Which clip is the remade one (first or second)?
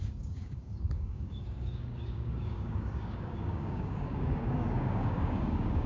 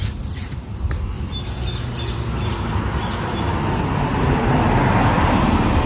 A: first